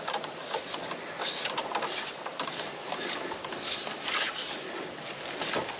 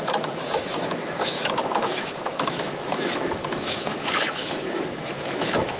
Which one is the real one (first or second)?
first